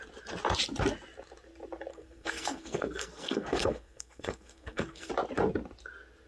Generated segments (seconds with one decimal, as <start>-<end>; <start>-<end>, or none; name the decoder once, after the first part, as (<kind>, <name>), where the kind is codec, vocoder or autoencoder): 1.9-5.1 (codec, SNAC)